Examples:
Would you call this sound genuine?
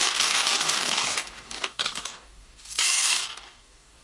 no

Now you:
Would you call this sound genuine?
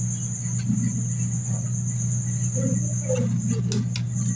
yes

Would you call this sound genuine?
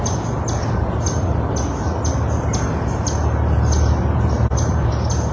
yes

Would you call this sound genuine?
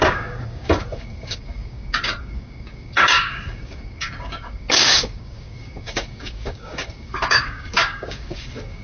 no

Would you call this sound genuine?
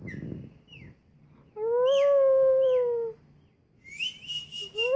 yes